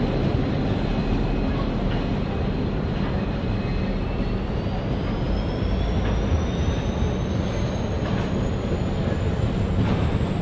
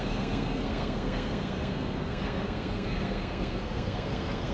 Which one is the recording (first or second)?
first